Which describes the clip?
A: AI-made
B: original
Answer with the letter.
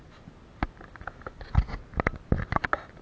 B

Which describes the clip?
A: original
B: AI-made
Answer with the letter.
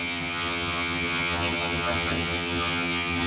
B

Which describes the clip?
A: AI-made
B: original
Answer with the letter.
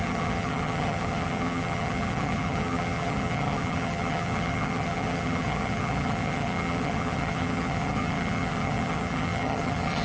A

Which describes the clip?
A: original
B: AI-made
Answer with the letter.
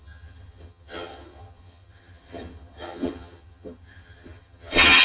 B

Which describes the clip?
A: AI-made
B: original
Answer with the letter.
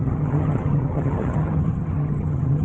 A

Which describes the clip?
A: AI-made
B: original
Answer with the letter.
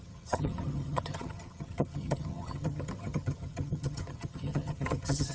A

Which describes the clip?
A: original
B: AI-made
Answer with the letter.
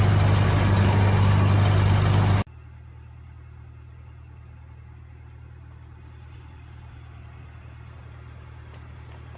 A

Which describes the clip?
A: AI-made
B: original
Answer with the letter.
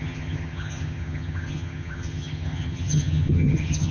A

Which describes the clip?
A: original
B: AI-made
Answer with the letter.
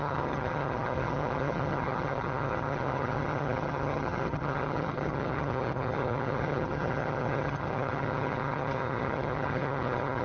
B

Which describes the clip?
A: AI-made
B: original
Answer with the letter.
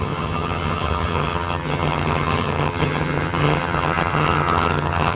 A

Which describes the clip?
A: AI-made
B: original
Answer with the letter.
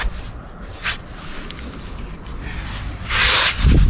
B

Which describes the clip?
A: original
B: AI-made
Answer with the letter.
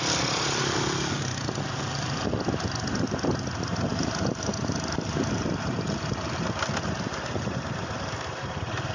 A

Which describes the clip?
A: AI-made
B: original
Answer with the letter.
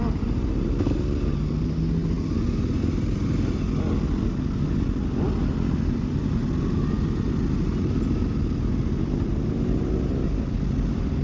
B